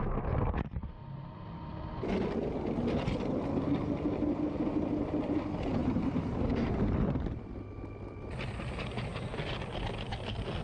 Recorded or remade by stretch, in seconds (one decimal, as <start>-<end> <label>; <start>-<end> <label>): 0.0-5.8 recorded; 5.8-7.4 remade; 7.4-10.6 recorded